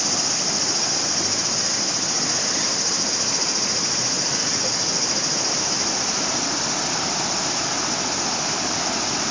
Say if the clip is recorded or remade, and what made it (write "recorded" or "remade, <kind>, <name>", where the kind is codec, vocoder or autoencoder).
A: recorded